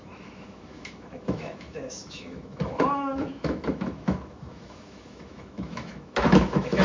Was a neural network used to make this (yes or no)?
yes